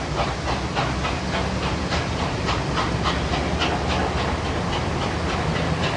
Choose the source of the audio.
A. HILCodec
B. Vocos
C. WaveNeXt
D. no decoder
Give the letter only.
D